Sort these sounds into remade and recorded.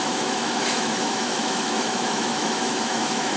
remade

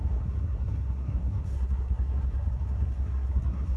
remade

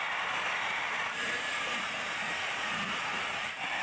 remade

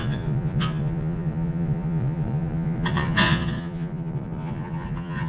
remade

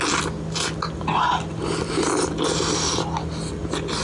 recorded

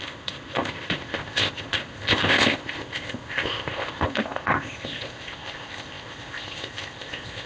remade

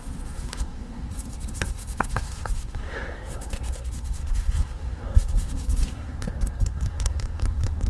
remade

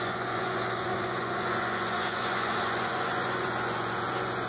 remade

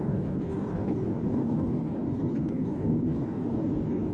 remade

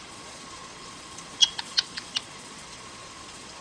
remade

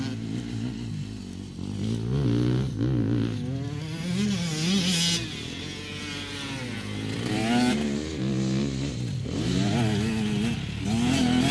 recorded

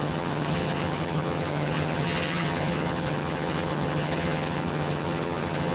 remade